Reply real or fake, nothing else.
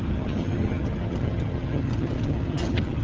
fake